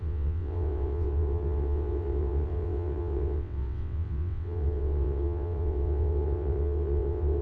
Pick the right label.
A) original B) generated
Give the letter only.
B